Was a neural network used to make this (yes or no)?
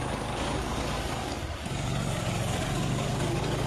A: yes